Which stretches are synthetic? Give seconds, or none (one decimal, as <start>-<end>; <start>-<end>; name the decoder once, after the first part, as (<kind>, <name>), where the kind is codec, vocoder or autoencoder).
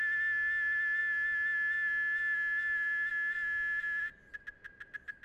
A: none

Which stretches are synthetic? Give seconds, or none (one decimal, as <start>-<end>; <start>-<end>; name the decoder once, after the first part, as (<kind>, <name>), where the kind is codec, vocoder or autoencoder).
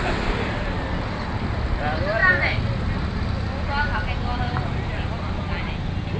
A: none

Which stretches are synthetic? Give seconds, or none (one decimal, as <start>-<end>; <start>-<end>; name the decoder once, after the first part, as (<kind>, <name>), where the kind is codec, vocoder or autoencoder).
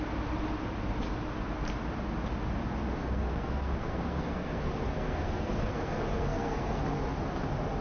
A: 3.0-6.8 (codec, SNAC)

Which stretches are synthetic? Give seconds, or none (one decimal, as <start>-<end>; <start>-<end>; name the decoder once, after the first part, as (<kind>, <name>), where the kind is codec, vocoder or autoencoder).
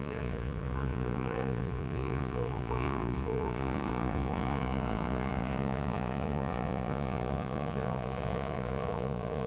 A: 0.0-9.5 (vocoder, Vocos)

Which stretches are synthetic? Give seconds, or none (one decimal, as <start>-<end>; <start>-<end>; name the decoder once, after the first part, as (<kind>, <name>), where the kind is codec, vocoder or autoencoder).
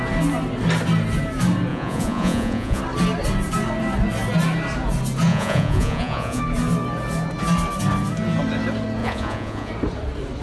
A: 1.7-2.8 (vocoder, Vocos); 5.3-6.4; 9.0-9.7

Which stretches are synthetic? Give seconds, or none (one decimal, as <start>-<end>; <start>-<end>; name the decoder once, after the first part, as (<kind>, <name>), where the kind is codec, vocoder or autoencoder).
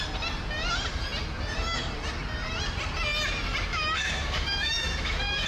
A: 3.7-5.5 (autoencoder, DAC-VAE)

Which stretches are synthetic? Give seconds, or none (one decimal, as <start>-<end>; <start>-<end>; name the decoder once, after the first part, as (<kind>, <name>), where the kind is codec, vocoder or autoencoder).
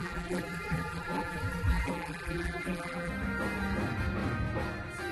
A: 0.0-3.1 (vocoder, BigVGAN v2)